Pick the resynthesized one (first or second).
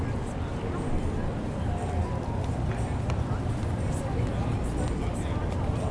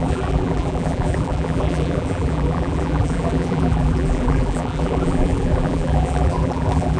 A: second